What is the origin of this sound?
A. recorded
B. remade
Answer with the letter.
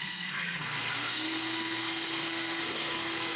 B